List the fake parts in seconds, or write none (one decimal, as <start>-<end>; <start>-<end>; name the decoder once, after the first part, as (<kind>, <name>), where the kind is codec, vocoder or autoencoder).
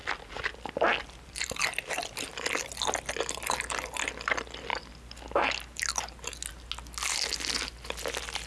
none